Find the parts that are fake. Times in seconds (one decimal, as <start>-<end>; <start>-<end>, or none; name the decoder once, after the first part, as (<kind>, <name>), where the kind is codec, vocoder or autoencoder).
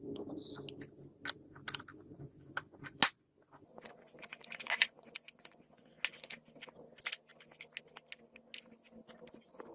1.9-6.3 (vocoder, Vocos)